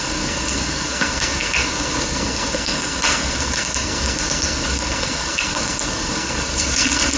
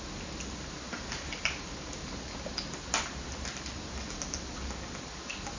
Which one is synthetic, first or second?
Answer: first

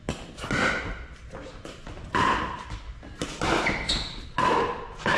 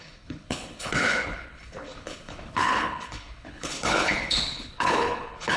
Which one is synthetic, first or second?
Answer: second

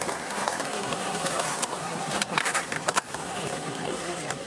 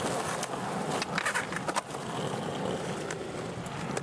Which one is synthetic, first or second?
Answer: first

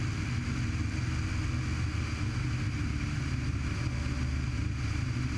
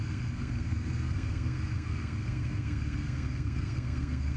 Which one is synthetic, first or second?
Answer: second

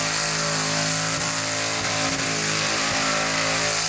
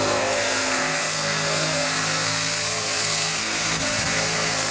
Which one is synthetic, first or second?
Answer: second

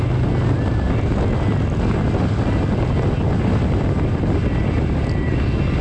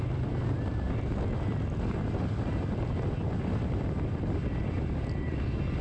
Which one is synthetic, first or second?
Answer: second